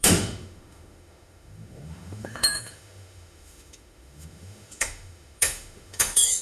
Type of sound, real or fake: fake